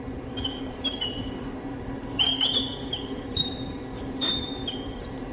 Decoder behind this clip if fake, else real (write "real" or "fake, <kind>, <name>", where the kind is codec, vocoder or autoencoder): fake, vocoder, BigVGAN v2